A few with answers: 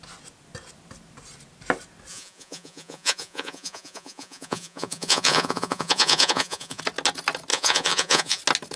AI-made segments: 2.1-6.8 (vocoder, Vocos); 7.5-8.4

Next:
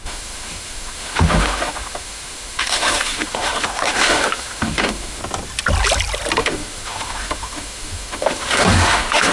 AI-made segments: 0.0-5.2 (autoencoder, DAC-VAE); 6.4-9.3

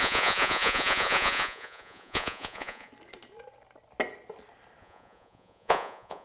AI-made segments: 0.0-2.9 (vocoder, Vocos); 4.8-6.2

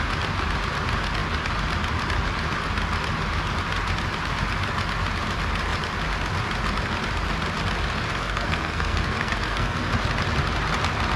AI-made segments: 8.2-9.9 (codec, SNAC)

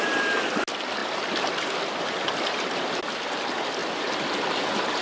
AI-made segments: none

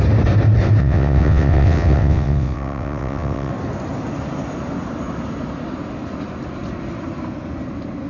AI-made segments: 0.8-3.5 (vocoder, WaveNeXt)